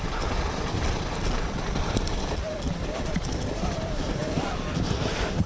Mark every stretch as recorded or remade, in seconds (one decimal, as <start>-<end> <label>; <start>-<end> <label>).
0.0-5.5 recorded